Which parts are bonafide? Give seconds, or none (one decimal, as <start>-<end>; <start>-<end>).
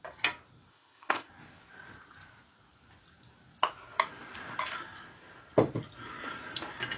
0.0-0.7; 1.3-7.0